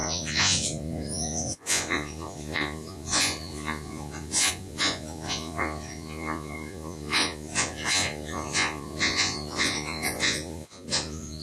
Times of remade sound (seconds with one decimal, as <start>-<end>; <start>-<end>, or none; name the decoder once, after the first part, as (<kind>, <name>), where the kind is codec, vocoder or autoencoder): 0.0-11.4 (vocoder, Vocos)